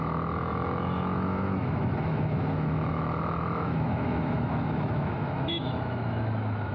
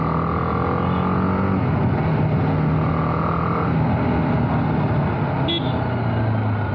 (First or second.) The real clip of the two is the second